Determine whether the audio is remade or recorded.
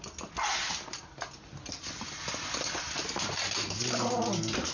recorded